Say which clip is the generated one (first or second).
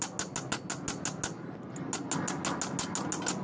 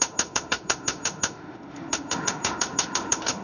second